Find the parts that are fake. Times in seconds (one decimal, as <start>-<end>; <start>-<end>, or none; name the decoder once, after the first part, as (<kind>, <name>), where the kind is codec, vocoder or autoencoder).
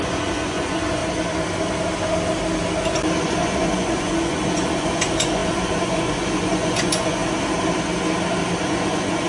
0.0-1.0 (vocoder, Vocos); 3.2-7.2; 8.6-9.3